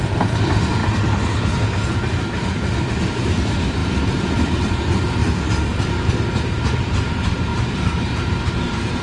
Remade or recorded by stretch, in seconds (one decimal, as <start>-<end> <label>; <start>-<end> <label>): 0.0-0.8 remade; 0.8-2.8 recorded; 2.8-5.2 remade; 5.2-6.1 recorded; 6.1-9.0 remade

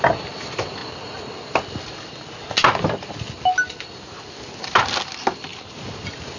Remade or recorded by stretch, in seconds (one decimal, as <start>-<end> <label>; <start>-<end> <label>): 0.0-6.4 recorded

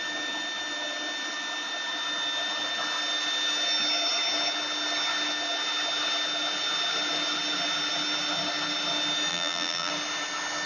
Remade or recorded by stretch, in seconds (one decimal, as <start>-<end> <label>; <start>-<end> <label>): 0.0-9.3 recorded; 9.3-9.9 remade; 9.9-10.7 recorded

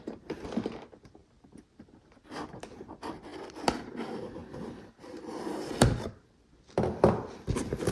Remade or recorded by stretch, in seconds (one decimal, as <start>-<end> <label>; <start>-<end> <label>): 0.0-3.3 remade; 3.3-3.8 recorded; 3.8-7.9 remade

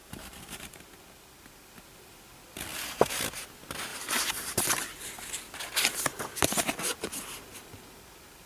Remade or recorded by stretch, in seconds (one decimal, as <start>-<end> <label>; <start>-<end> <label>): 0.0-0.8 remade; 0.8-2.7 recorded; 2.7-3.3 remade; 3.3-3.9 recorded; 3.9-4.6 remade; 4.6-8.5 recorded

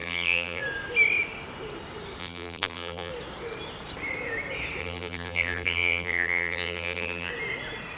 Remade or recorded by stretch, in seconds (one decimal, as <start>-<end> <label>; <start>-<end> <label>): 0.0-0.6 remade; 0.6-2.2 recorded; 2.2-3.1 remade; 3.1-4.8 recorded; 4.8-7.3 remade; 7.3-8.0 recorded

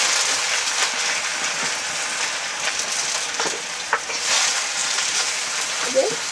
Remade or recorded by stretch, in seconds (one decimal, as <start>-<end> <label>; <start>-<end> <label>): 0.0-4.8 recorded; 4.8-6.3 remade

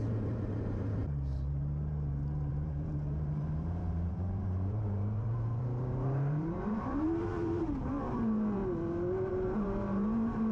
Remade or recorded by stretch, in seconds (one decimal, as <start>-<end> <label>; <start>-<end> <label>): 0.0-1.0 remade; 1.0-2.5 recorded; 2.5-8.6 remade; 8.6-9.3 recorded; 9.3-10.5 remade